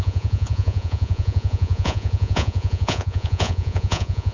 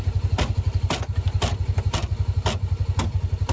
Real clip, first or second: second